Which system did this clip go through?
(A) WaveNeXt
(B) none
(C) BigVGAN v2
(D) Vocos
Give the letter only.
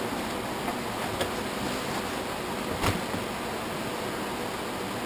B